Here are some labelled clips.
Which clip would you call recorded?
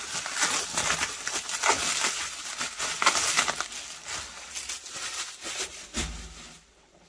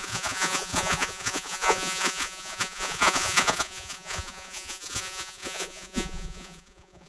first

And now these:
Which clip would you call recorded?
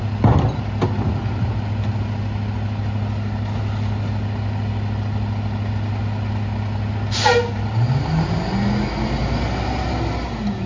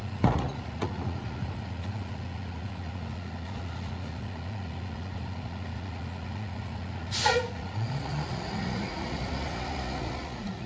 first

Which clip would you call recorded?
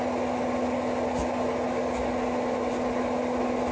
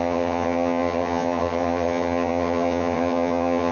first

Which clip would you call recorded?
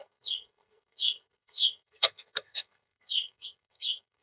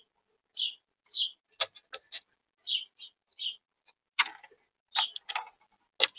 second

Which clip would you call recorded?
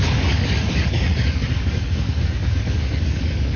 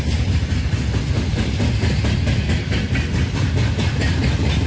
second